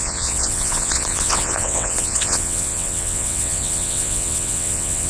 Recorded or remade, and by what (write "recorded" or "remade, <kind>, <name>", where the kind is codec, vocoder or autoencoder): remade, vocoder, WaveNeXt